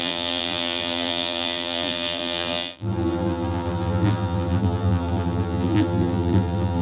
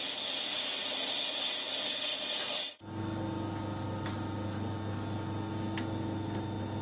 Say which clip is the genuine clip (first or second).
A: second